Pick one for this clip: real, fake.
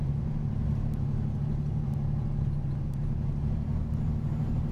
fake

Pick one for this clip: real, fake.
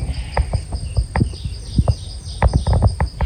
real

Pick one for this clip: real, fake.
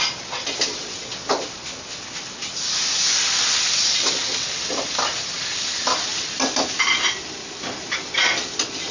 real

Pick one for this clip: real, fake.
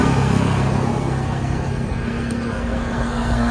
fake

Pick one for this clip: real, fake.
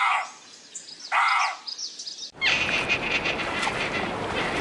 real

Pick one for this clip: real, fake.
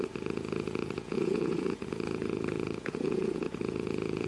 fake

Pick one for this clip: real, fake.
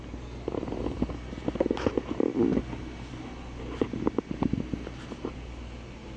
real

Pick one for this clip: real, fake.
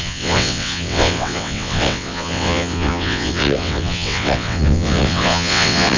fake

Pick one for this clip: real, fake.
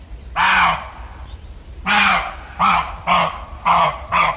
real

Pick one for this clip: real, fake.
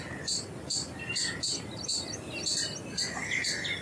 real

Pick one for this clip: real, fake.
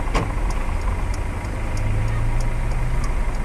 real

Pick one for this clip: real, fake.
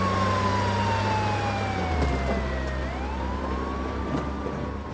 real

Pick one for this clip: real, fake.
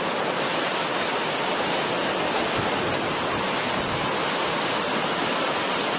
real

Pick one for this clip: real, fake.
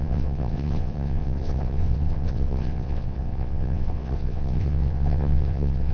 fake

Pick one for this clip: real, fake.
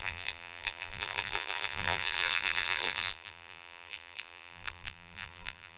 fake